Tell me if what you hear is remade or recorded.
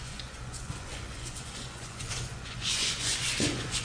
remade